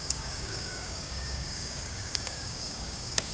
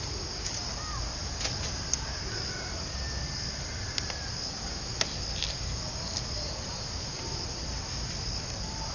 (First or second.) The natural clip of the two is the second